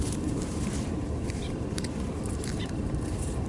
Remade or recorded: remade